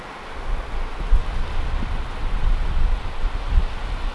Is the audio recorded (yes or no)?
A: yes